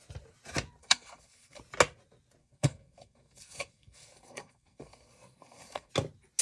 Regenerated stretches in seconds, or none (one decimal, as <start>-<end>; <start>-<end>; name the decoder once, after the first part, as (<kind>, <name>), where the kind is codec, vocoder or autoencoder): 0.8-1.6 (codec, SNAC); 2.4-5.9